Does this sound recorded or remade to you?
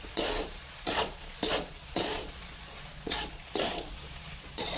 remade